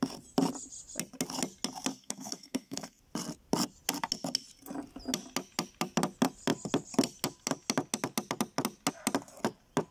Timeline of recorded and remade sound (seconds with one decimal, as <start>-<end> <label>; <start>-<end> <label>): 0.0-1.9 recorded; 1.9-3.0 remade; 3.0-9.9 recorded